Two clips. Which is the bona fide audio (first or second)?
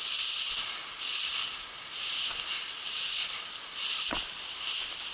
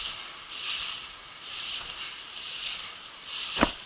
first